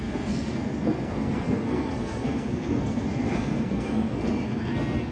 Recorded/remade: remade